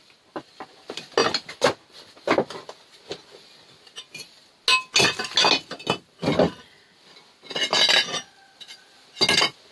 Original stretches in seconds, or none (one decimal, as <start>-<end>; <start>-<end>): 0.0-9.7